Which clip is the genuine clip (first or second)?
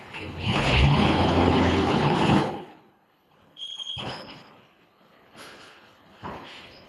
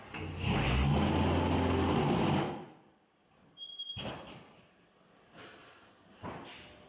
second